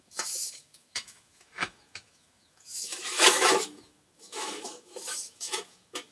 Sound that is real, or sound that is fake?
fake